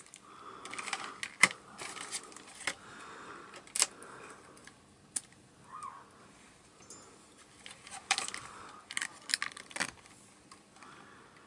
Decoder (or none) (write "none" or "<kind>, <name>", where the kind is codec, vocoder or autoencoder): none